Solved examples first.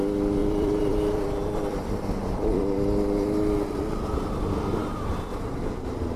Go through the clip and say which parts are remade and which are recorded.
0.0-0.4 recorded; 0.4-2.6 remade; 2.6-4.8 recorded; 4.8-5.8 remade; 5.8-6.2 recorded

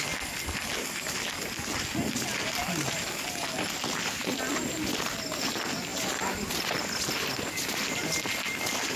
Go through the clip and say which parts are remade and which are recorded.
0.0-9.0 recorded

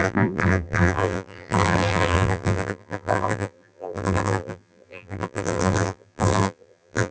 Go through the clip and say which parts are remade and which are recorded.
0.0-7.1 remade

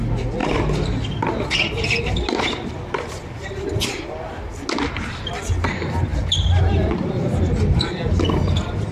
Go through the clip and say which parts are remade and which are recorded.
0.0-8.9 recorded

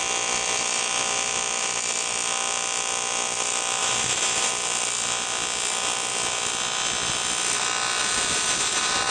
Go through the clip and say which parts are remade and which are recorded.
0.0-3.8 recorded; 3.8-4.5 remade; 4.5-8.0 recorded; 8.0-9.1 remade

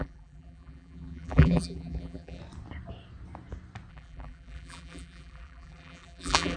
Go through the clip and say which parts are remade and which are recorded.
0.0-2.4 remade; 2.4-3.9 recorded; 3.9-6.6 remade